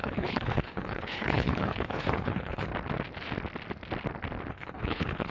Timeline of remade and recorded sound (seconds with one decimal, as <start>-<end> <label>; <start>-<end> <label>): 0.0-2.7 remade; 2.7-4.5 recorded; 4.5-5.3 remade